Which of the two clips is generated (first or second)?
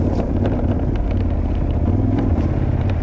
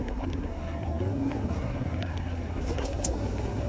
second